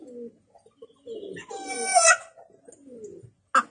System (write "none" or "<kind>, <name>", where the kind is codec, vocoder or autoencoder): none